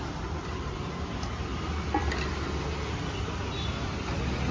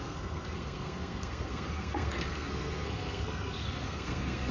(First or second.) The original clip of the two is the first